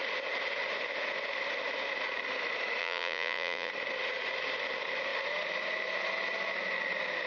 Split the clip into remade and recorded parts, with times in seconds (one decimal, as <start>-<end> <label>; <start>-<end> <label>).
0.0-2.8 recorded; 2.8-3.7 remade; 3.7-7.3 recorded